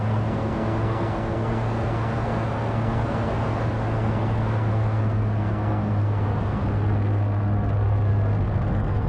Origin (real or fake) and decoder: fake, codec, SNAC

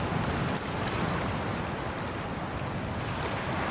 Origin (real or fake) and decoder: real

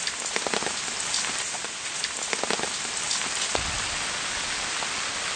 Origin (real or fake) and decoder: real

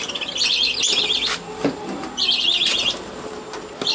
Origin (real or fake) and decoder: real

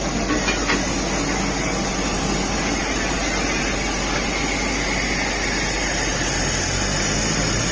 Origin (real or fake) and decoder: real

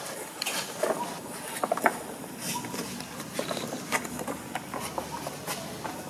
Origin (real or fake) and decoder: real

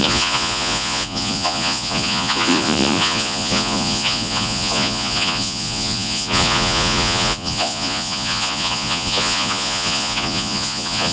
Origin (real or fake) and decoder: fake, vocoder, Vocos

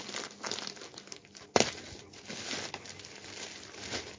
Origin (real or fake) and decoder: real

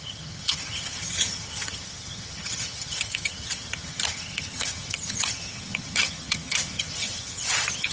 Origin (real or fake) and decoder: fake, vocoder, HiFi-GAN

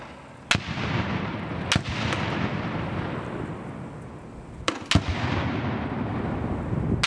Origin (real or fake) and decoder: real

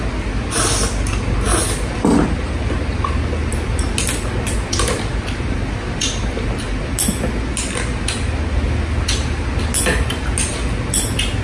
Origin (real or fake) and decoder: real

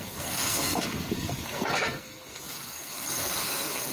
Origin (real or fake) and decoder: fake, codec, SNAC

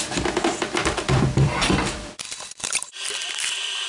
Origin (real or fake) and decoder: fake, vocoder, BigVGAN v2